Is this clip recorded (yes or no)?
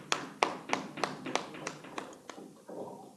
yes